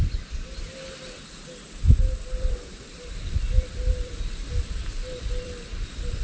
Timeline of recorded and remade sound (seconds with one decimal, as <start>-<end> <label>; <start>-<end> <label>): 0.0-1.9 recorded; 1.9-6.2 remade